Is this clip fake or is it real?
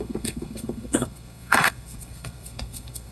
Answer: fake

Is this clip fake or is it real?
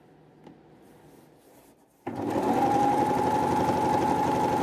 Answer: real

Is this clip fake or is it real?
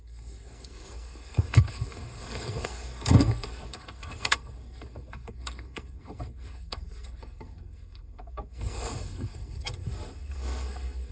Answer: fake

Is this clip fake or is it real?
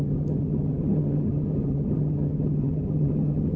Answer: fake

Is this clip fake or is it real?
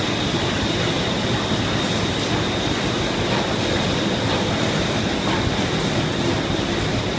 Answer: real